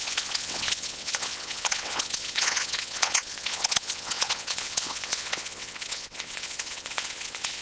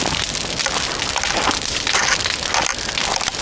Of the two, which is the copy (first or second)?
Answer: first